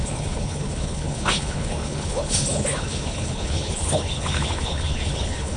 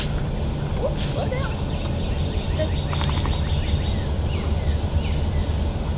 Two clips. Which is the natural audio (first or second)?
second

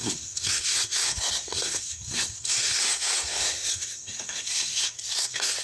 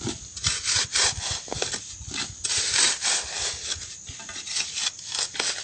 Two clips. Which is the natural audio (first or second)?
second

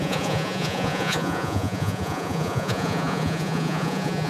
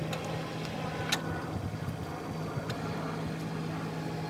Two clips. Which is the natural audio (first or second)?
second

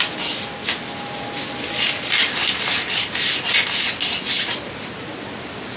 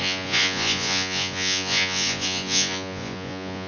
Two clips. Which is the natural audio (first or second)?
first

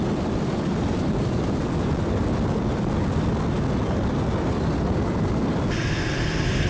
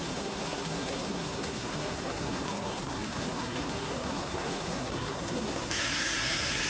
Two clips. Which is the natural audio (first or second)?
first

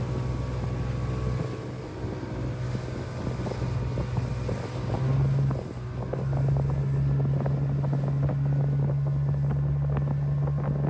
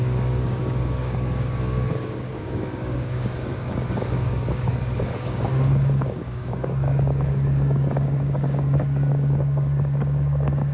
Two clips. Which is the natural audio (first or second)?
first